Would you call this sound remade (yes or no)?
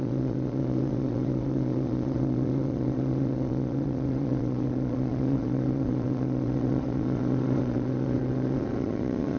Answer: yes